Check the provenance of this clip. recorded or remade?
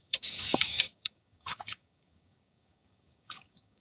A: remade